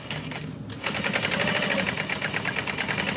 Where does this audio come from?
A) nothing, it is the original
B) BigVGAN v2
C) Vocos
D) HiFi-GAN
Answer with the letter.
A